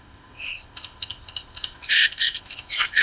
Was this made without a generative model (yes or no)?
no